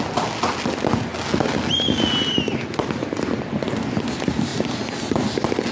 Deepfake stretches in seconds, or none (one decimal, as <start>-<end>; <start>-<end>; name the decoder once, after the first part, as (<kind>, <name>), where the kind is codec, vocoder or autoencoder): none